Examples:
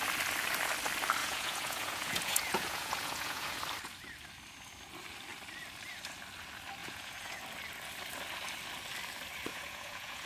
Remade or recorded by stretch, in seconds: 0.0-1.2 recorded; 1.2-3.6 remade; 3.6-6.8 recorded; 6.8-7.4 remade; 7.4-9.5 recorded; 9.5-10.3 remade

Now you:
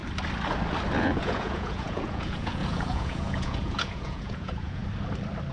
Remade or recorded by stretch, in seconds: 0.0-1.0 recorded; 1.0-4.8 remade; 4.8-5.5 recorded

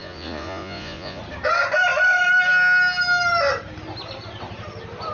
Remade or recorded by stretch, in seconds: 0.0-1.2 remade; 1.2-5.1 recorded